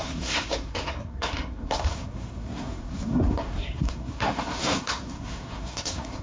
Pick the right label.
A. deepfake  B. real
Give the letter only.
A